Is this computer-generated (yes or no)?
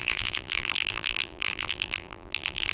yes